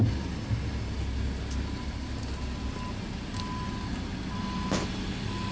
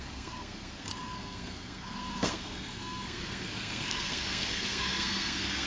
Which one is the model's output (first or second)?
second